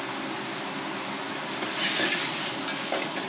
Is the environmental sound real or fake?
real